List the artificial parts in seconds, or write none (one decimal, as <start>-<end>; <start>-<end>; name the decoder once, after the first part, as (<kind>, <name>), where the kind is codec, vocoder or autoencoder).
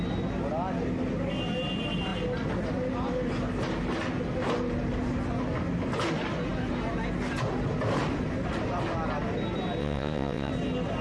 9.8-10.5 (vocoder, Vocos)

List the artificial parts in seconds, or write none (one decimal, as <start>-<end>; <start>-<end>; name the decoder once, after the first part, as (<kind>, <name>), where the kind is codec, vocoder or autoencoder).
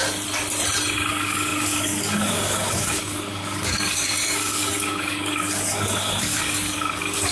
1.1-7.3 (codec, DAC)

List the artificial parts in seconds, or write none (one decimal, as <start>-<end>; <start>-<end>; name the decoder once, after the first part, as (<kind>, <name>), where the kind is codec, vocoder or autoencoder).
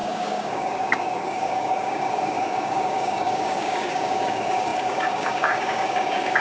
0.0-6.4 (codec, DAC)